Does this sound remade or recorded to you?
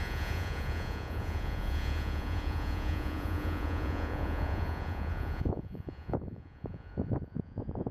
remade